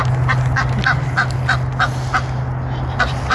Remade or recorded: recorded